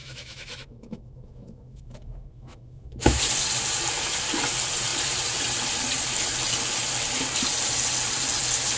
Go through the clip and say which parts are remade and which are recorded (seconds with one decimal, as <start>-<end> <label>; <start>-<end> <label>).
0.0-3.2 remade; 3.2-8.8 recorded